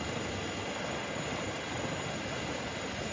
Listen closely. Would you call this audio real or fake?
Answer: real